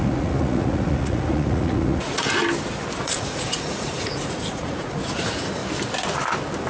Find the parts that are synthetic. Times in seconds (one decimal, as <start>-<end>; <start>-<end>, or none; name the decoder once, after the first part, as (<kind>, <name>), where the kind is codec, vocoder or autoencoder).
0.0-2.4 (vocoder, Vocos); 3.0-5.6